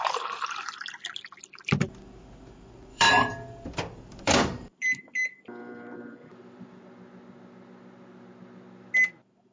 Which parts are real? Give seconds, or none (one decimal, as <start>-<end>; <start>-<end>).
0.0-2.9; 6.8-9.5